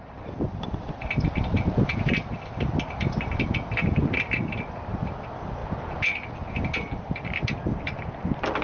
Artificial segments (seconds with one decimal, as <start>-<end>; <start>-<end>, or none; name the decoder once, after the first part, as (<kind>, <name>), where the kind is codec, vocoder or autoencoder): none